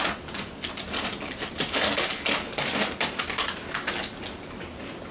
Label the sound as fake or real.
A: real